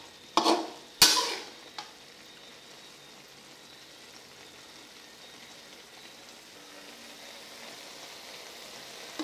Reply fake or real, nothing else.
real